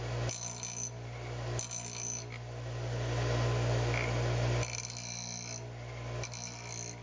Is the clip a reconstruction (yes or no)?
no